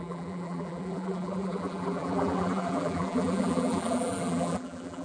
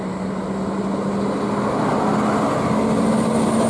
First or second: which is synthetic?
first